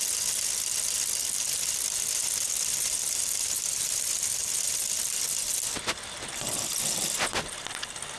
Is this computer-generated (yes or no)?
no